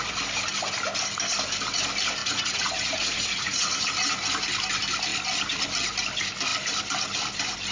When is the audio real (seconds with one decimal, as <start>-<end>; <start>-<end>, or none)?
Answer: 0.0-2.2; 3.7-7.7